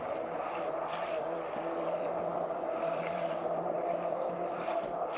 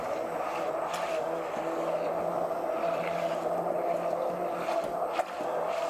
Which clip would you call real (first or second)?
second